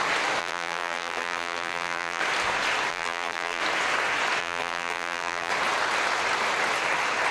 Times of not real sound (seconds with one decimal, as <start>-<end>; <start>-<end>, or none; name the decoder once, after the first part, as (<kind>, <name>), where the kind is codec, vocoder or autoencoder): 0.4-2.2 (vocoder, BigVGAN v2); 2.9-3.6; 4.4-5.5